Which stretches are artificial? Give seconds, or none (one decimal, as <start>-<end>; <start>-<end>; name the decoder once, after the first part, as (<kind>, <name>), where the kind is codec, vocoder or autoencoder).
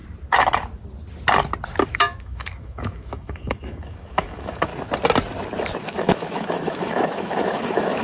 1.9-4.7 (autoencoder, DAC-VAE); 5.8-8.0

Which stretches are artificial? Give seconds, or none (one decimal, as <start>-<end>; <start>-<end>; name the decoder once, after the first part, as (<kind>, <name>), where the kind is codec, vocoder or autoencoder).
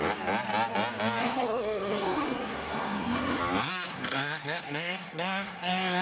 1.2-3.4 (codec, SNAC); 3.9-6.0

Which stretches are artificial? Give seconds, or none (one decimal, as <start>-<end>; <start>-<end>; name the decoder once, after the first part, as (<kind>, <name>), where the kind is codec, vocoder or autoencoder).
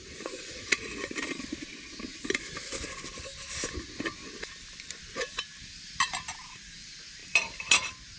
0.0-1.1 (vocoder, Vocos)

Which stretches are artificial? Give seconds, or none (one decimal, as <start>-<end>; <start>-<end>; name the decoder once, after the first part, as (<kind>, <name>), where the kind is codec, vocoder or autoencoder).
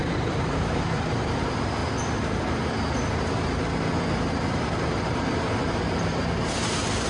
0.0-1.8 (vocoder, BigVGAN v2); 4.2-7.1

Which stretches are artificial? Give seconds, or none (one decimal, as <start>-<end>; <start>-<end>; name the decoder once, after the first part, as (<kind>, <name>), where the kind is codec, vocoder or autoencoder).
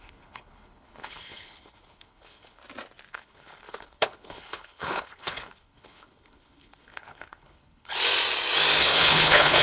0.0-2.6 (codec, HILCodec); 3.1-8.0; 8.8-9.6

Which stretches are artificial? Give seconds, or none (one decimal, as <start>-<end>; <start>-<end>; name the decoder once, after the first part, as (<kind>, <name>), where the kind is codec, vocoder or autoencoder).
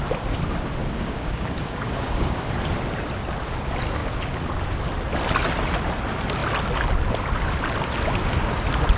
0.8-2.5 (codec, DAC)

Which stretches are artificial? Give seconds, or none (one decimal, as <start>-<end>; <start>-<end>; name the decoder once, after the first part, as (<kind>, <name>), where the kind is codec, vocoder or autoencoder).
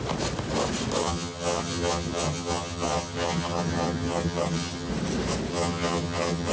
1.0-4.9 (vocoder, HiFi-GAN); 5.5-6.5